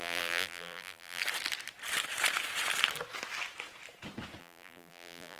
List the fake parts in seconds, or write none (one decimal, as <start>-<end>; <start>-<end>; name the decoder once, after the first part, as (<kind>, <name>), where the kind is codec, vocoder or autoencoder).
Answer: 0.0-1.2 (vocoder, BigVGAN v2); 4.4-5.4